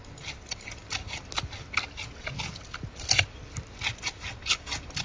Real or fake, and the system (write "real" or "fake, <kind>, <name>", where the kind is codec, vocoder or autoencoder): real